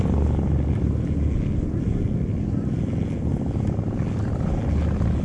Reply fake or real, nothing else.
real